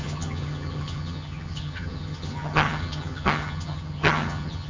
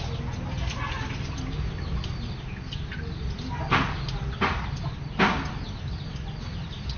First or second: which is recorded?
second